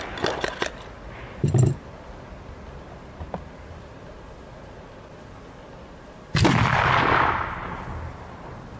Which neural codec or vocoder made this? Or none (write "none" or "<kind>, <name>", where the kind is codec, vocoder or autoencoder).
none